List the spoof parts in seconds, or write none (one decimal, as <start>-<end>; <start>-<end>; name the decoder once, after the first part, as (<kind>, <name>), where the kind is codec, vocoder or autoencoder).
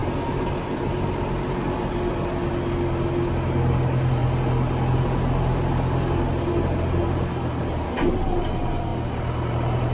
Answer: none